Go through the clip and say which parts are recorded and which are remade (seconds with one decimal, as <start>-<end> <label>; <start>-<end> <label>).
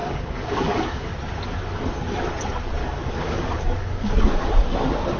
0.0-1.1 remade; 1.1-2.8 recorded; 2.8-4.5 remade; 4.5-5.2 recorded